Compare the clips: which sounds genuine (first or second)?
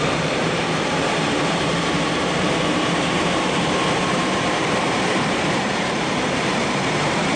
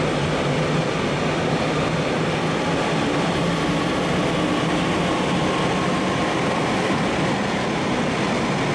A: second